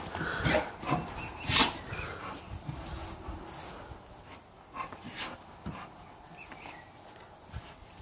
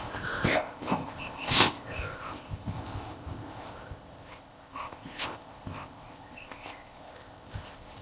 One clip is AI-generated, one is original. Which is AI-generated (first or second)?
second